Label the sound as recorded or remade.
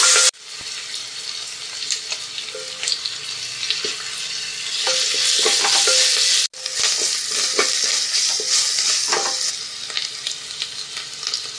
recorded